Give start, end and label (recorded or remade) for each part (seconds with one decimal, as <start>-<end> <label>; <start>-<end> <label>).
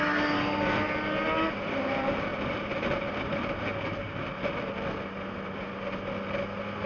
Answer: 0.0-6.9 recorded